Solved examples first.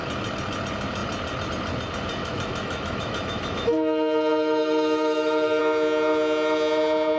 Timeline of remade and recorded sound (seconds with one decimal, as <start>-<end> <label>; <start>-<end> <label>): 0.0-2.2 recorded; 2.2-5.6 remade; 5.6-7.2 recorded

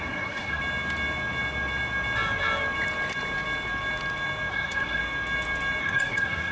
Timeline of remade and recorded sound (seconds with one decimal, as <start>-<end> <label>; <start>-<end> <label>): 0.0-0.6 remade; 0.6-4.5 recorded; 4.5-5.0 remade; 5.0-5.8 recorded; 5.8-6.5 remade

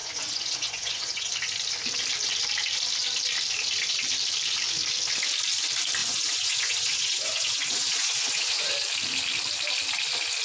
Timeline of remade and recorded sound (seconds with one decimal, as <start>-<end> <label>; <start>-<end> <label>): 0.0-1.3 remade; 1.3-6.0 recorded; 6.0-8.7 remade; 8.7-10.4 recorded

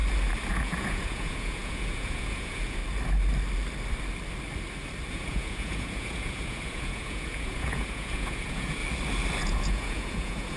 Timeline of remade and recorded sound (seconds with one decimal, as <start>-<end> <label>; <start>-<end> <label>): 0.0-0.5 recorded; 0.5-2.8 remade; 2.8-5.1 recorded; 5.1-8.8 remade; 8.8-9.4 recorded; 9.4-10.6 remade

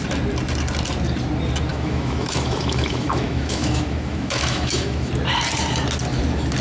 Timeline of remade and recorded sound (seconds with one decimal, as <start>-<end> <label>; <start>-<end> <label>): 0.0-1.7 recorded; 1.7-5.1 remade; 5.1-6.6 recorded

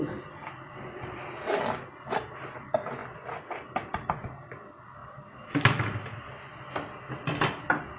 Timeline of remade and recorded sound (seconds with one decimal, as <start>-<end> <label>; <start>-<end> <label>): 0.0-5.0 recorded; 5.0-6.1 remade; 6.1-8.0 recorded

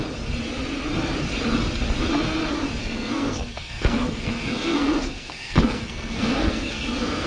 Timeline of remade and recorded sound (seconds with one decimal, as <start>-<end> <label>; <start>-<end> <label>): 0.0-2.8 recorded; 2.8-7.3 remade